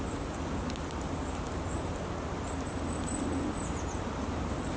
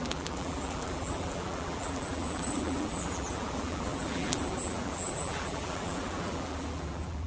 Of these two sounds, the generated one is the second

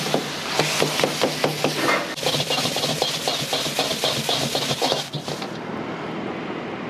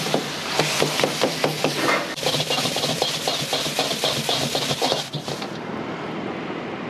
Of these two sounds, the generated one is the second